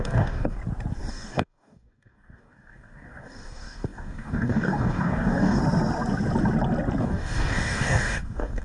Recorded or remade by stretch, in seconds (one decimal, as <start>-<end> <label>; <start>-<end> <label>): 0.0-0.6 remade; 0.6-1.1 recorded; 1.1-5.6 remade; 5.6-7.0 recorded; 7.0-8.6 remade